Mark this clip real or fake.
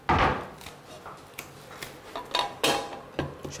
real